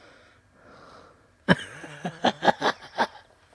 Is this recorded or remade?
remade